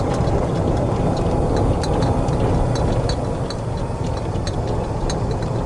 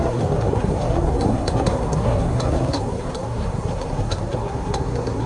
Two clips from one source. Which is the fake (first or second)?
second